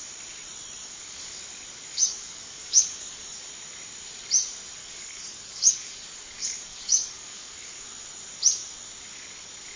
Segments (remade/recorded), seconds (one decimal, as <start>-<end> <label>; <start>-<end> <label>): 0.0-0.8 recorded; 0.8-1.3 remade; 1.3-1.9 recorded; 1.9-3.5 remade; 3.5-4.8 recorded; 4.8-7.8 remade; 7.8-9.8 recorded